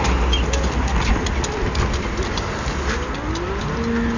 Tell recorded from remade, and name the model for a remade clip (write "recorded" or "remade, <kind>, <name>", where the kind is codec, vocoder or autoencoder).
recorded